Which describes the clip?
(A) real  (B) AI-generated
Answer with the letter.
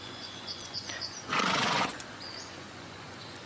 B